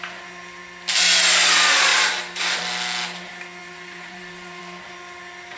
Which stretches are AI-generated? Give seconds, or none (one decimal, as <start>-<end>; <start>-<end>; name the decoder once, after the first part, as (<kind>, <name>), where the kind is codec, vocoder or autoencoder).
1.9-2.6 (vocoder, BigVGAN v2); 3.6-4.6